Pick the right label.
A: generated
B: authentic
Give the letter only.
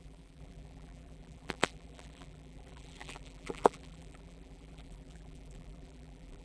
A